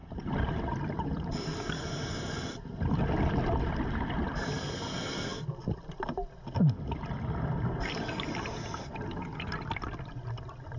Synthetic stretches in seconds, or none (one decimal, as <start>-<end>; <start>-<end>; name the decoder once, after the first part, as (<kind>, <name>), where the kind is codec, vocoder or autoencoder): 0.0-0.6 (vocoder, BigVGAN v2)